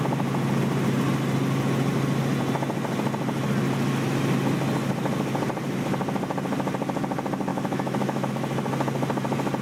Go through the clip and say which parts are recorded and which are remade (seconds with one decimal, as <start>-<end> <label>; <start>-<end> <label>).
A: 0.0-7.5 recorded; 7.5-8.3 remade; 8.3-9.6 recorded